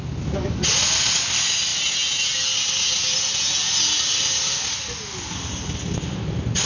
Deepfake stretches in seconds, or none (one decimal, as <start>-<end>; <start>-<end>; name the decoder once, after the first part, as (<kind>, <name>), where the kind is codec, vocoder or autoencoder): none